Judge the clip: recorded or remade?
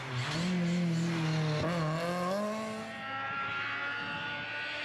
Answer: recorded